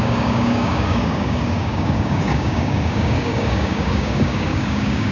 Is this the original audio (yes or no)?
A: no